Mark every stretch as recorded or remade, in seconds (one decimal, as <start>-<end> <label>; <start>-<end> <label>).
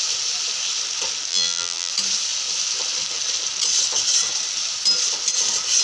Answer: 0.0-1.3 recorded; 1.3-1.9 remade; 1.9-5.8 recorded